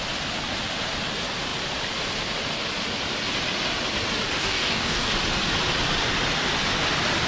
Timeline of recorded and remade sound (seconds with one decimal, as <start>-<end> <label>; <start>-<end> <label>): 0.0-4.4 recorded; 4.4-5.1 remade; 5.1-7.3 recorded